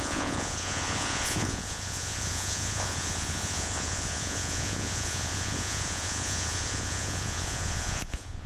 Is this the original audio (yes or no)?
no